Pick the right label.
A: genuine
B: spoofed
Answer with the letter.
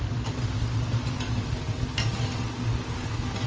A